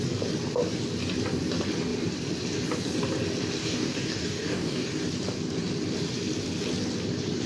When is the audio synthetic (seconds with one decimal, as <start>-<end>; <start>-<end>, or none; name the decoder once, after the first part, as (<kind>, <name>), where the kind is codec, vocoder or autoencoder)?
3.6-4.9 (codec, DAC)